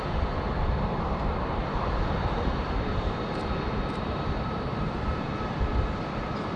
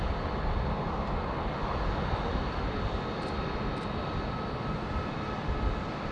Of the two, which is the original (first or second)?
second